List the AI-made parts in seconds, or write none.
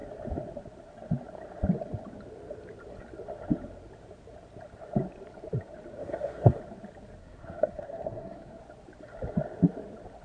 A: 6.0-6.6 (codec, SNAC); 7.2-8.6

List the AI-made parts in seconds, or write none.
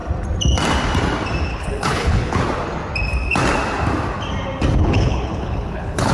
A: 1.5-2.4 (codec, HILCodec); 4.8-6.1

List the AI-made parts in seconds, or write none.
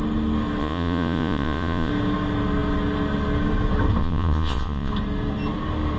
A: 0.6-1.9 (vocoder, Vocos); 4.0-4.9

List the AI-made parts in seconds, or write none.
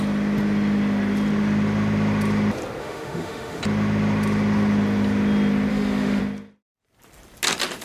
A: 2.8-3.6 (autoencoder, DAC-VAE); 5.7-6.2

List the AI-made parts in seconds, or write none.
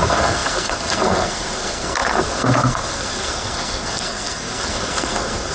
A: 0.0-5.5 (codec, SNAC)